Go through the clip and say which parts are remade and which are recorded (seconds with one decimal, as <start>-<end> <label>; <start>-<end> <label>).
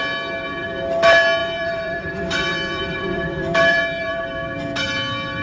0.0-1.4 recorded; 1.4-4.2 remade; 4.2-5.4 recorded